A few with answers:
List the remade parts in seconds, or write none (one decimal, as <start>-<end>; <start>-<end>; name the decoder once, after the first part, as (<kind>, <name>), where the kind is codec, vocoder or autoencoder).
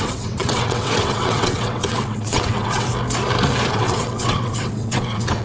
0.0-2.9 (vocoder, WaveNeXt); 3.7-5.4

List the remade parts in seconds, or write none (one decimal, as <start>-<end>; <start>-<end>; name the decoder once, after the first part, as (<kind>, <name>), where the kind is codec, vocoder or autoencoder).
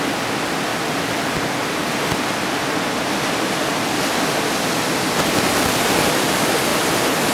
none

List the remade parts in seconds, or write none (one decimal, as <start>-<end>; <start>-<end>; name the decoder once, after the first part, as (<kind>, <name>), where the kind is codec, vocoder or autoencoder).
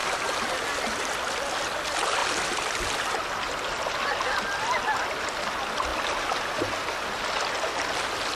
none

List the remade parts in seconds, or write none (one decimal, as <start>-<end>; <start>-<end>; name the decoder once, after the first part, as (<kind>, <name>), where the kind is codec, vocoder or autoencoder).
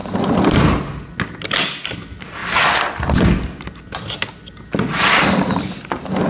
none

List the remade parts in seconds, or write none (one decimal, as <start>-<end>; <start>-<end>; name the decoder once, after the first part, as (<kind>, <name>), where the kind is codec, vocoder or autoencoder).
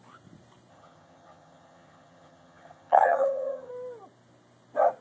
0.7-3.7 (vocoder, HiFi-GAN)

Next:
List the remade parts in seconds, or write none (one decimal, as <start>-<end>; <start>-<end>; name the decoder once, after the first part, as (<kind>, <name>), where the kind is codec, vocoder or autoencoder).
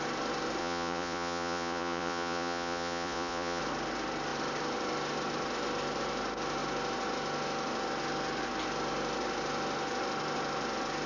0.6-3.6 (vocoder, Vocos)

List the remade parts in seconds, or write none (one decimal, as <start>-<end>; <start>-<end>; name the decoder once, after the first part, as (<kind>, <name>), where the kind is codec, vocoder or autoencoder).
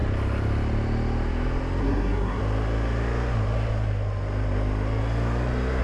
1.8-2.4 (codec, SNAC)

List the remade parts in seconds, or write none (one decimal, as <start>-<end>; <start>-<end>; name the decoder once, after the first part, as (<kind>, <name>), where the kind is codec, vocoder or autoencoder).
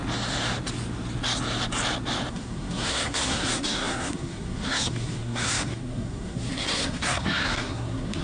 2.3-8.2 (codec, SNAC)